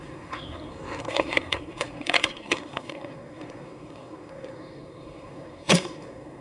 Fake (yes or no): yes